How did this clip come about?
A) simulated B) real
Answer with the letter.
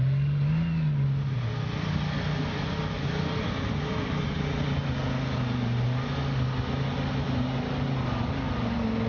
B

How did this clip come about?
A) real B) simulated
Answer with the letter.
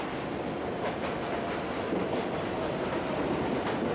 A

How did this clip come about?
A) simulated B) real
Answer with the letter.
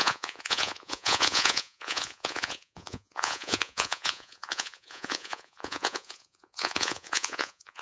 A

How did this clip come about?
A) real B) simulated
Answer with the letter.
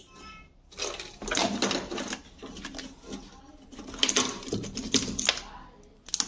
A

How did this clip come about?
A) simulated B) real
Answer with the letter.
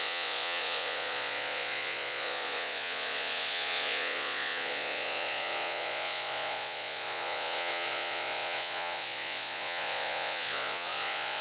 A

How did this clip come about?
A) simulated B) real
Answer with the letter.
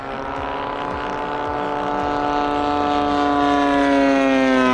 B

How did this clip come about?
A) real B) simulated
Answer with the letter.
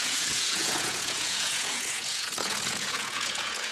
B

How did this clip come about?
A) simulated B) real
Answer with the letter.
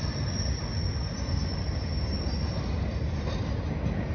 B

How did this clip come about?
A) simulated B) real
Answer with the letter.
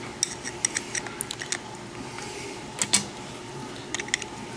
B